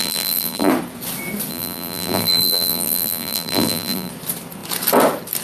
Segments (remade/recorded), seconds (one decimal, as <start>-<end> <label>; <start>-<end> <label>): 0.0-0.7 remade; 0.7-1.5 recorded; 1.5-4.1 remade; 4.1-5.4 recorded